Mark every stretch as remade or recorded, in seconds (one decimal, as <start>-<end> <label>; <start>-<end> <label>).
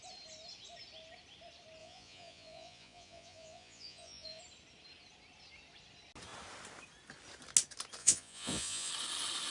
0.0-1.8 recorded; 1.8-4.4 remade; 4.4-8.0 recorded; 8.0-8.9 remade; 8.9-9.5 recorded